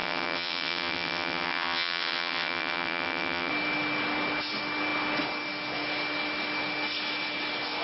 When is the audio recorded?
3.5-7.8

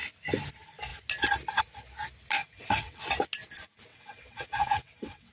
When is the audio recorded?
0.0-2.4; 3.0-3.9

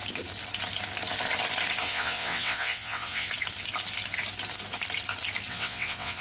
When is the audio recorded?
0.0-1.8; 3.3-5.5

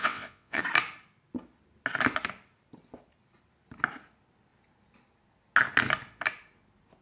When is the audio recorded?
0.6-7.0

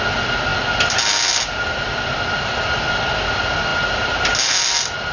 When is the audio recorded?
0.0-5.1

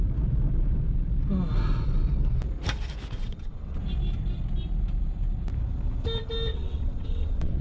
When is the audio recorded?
0.0-3.2; 3.8-6.5

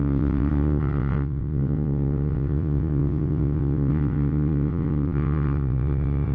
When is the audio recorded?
none

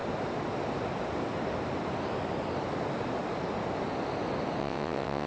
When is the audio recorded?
0.0-4.6